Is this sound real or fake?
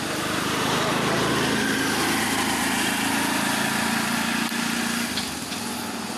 real